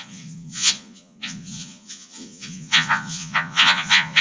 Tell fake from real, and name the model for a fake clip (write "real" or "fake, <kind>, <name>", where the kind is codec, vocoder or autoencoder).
fake, vocoder, Vocos